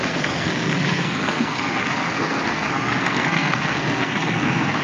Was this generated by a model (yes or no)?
yes